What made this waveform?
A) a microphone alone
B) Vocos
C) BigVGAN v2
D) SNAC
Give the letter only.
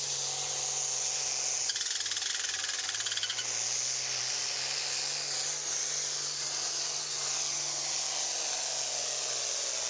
A